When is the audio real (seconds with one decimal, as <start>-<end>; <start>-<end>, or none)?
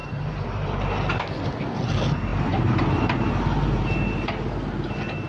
0.9-2.3; 3.3-5.3